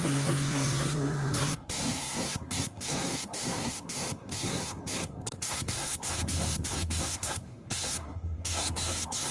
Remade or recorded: remade